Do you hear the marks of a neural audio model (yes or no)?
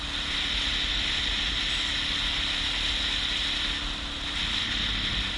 no